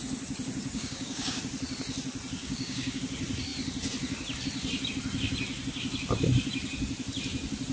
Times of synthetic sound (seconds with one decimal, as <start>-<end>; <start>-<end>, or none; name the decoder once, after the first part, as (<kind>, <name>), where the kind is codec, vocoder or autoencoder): 0.7-1.4 (codec, DAC); 2.4-3.0